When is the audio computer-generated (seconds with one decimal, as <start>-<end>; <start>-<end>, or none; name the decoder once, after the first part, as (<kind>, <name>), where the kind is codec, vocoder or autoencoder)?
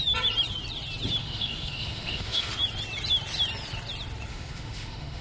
1.2-2.5 (autoencoder, DAC-VAE); 4.3-5.2